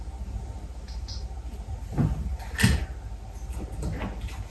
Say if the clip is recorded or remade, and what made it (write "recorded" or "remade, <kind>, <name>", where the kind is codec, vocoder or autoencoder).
recorded